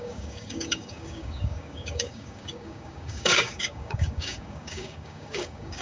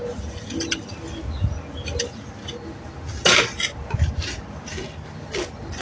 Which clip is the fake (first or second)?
first